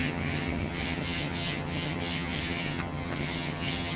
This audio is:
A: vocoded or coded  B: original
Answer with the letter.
A